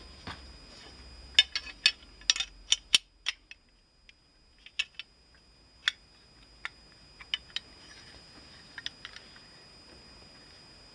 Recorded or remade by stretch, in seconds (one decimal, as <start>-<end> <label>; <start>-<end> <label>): 0.0-10.9 recorded